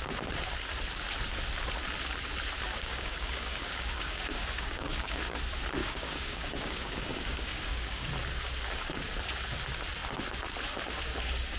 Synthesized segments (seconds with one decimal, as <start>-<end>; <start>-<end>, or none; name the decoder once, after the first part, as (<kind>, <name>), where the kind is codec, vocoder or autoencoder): 2.7-5.2 (codec, DAC); 5.8-8.1